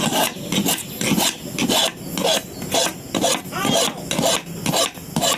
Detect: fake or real real